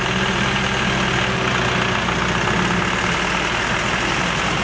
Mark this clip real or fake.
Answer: real